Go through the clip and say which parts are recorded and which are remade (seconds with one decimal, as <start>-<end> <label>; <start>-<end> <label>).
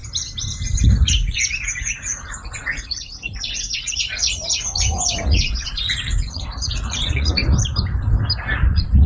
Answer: 0.0-0.8 recorded; 0.8-7.4 remade; 7.4-8.5 recorded; 8.5-9.1 remade